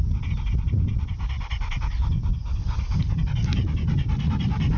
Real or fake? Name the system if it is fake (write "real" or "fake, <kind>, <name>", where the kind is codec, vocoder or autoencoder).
real